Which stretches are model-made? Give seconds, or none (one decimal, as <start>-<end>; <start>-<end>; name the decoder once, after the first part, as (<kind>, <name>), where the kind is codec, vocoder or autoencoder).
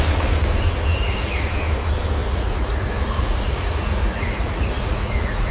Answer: 0.9-1.5 (vocoder, Vocos); 2.2-5.5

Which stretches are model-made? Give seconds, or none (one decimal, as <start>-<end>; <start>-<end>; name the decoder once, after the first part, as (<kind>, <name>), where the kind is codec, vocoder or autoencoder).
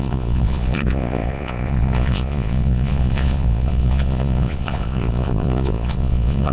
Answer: 0.0-6.5 (vocoder, Vocos)